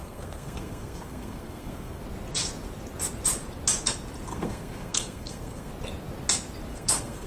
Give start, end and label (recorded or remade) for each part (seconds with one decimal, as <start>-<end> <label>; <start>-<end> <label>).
0.0-2.0 remade; 2.0-4.3 recorded; 4.3-5.7 remade; 5.7-6.7 recorded; 6.7-7.3 remade